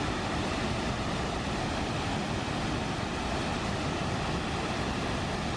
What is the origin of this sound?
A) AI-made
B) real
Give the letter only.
B